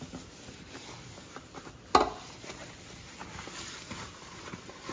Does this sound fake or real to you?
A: real